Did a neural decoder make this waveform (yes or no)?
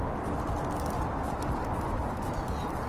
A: no